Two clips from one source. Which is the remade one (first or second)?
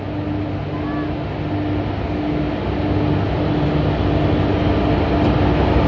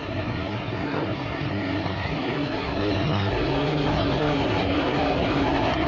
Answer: second